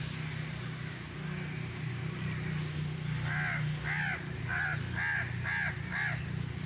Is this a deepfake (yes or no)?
no